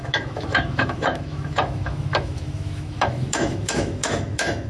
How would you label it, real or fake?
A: fake